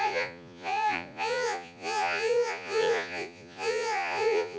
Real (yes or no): no